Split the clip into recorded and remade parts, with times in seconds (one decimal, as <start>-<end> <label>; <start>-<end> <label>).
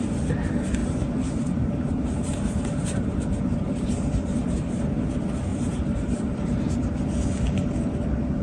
0.0-0.8 recorded; 0.8-4.7 remade; 4.7-5.5 recorded; 5.5-6.9 remade; 6.9-8.4 recorded